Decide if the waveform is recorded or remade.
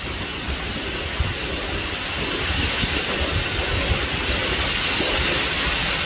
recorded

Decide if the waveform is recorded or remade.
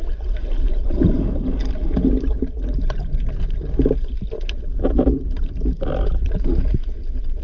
recorded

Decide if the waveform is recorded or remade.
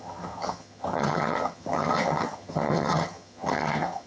remade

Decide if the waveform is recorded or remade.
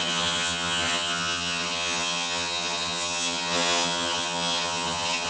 remade